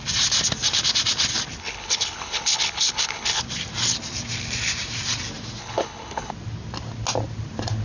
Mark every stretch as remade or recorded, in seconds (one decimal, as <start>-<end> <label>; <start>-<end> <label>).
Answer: 0.0-1.6 recorded; 1.6-3.4 remade; 3.4-5.6 recorded; 5.6-6.3 remade; 6.3-7.8 recorded